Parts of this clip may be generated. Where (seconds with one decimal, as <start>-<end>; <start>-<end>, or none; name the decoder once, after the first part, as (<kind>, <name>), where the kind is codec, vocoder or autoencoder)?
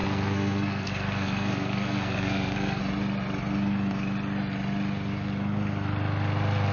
0.0-2.8 (codec, SNAC)